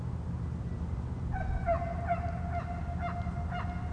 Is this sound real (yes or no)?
yes